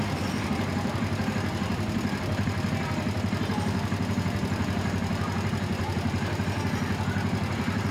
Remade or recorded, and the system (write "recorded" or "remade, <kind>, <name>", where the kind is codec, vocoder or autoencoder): recorded